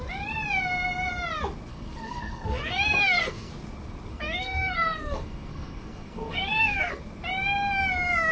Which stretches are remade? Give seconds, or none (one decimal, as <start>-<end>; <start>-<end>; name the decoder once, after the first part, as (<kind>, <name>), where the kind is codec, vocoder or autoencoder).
1.7-3.5 (codec, SNAC); 4.1-7.0